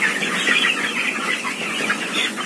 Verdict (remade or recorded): remade